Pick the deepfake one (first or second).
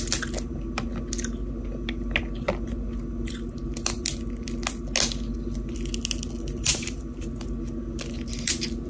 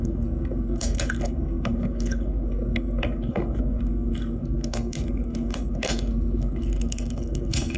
second